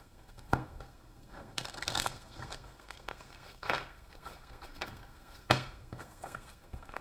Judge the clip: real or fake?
fake